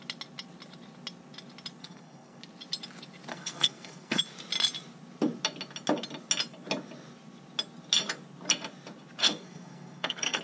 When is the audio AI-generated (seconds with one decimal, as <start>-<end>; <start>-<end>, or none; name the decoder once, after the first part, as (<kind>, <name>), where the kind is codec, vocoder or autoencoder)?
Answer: 1.8-2.4 (codec, SNAC); 3.3-4.2; 9.2-10.4